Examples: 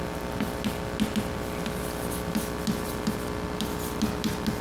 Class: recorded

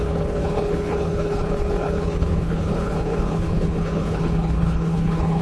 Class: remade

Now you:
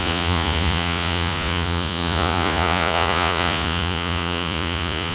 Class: remade